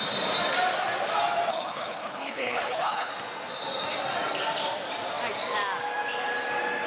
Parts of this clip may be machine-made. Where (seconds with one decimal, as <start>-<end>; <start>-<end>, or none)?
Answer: 1.5-3.1